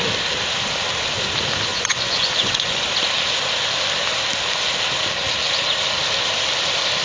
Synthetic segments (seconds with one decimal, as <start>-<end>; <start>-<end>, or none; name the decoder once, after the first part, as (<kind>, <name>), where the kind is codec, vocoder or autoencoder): 1.7-2.8 (vocoder, Vocos)